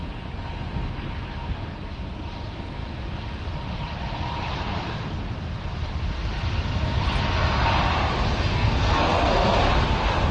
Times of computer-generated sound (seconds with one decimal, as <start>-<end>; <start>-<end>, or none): 8.5-9.6